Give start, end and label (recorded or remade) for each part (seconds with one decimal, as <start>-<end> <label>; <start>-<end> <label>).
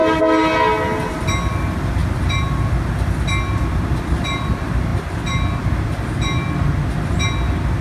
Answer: 0.0-7.8 recorded